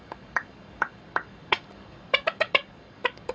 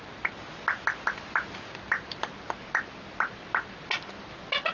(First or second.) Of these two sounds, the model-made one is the first